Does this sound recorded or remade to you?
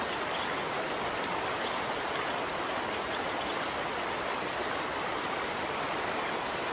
recorded